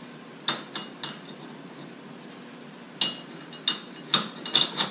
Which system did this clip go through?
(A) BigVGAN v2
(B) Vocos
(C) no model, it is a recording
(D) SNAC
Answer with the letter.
C